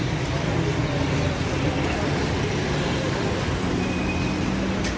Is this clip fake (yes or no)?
no